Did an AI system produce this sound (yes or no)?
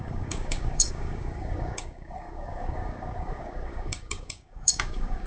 yes